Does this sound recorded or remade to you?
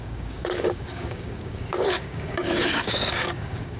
remade